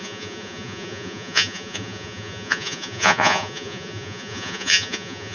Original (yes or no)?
no